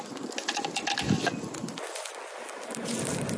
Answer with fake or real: real